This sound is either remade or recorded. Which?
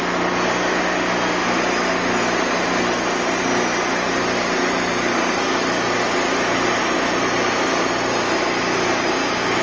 recorded